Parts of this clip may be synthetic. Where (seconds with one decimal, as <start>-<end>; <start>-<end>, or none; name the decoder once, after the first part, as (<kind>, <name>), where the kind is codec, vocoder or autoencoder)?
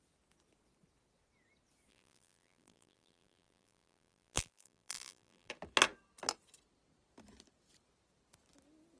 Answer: 1.9-5.5 (vocoder, BigVGAN v2)